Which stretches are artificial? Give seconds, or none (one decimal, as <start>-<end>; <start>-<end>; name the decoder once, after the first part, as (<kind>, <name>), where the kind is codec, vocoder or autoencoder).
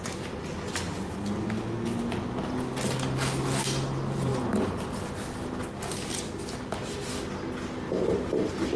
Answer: none